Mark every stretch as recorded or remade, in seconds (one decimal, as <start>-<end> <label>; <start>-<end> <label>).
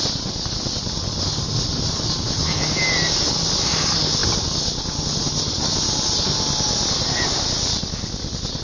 0.0-8.6 recorded